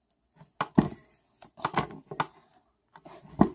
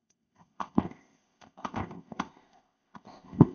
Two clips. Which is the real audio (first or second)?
first